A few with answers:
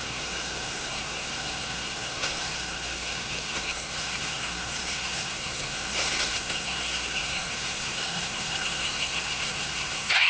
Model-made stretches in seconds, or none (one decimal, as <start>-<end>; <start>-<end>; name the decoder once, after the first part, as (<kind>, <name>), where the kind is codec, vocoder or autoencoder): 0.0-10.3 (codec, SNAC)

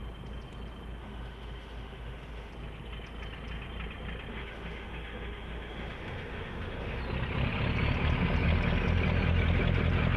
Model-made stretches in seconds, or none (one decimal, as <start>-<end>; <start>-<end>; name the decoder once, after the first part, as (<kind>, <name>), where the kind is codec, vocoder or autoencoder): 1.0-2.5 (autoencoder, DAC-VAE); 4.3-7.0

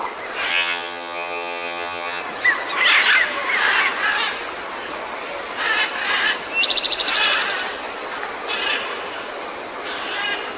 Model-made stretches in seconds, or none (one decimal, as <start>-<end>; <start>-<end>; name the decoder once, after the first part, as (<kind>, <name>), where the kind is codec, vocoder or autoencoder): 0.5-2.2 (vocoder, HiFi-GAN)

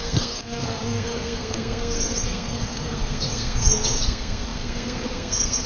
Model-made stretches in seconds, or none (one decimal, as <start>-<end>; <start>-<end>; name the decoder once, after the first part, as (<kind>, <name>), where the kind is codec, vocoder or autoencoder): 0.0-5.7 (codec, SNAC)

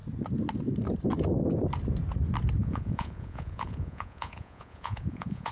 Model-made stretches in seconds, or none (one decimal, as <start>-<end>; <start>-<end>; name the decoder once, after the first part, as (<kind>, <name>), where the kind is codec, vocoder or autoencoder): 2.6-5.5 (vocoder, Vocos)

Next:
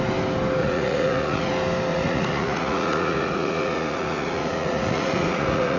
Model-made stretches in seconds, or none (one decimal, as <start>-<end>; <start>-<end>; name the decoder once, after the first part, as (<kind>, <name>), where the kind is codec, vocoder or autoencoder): 0.6-1.5 (vocoder, Vocos); 1.9-5.8

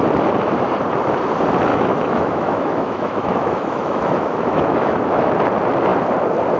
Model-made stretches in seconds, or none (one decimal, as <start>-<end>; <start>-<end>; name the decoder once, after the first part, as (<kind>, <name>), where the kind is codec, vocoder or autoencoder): 1.7-5.3 (autoencoder, DAC-VAE)

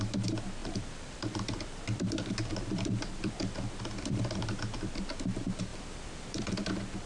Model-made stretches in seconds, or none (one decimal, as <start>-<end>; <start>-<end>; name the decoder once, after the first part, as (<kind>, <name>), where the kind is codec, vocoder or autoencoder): 0.6-4.9 (vocoder, BigVGAN v2); 5.7-6.5